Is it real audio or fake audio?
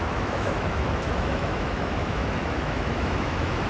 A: fake